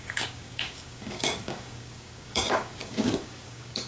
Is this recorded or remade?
remade